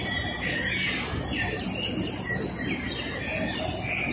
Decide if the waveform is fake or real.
real